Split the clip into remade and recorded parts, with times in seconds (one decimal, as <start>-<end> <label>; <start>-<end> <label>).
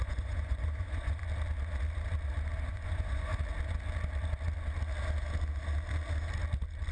0.0-1.2 remade; 1.2-2.7 recorded; 2.7-3.3 remade; 3.3-6.9 recorded